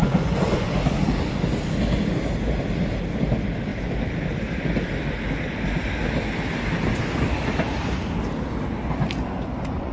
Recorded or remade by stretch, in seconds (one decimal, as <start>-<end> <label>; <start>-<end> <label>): 0.0-0.7 remade; 0.7-9.2 recorded; 9.2-9.9 remade